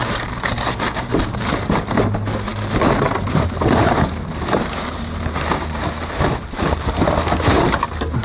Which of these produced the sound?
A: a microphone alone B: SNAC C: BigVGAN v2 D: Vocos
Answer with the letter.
C